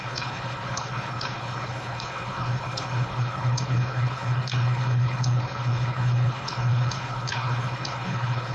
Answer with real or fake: fake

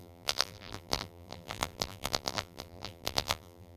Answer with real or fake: fake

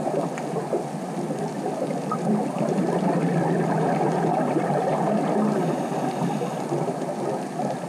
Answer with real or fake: real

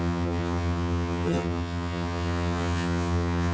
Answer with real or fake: fake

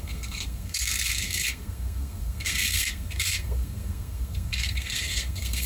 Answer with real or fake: fake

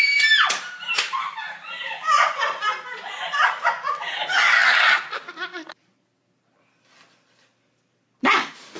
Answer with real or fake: real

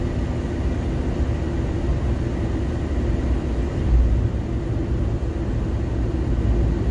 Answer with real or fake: real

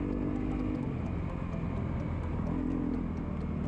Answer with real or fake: real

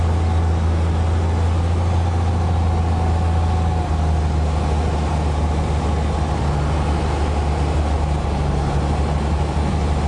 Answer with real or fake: real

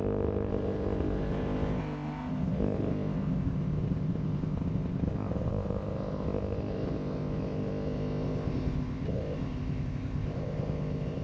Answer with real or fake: fake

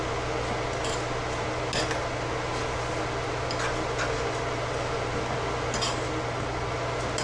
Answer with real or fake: real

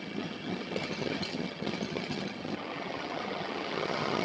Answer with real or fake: fake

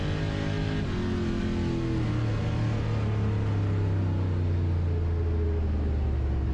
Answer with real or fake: real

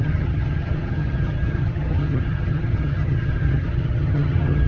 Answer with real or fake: fake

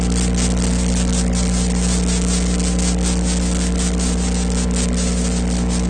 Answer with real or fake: real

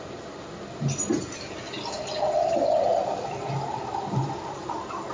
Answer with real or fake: real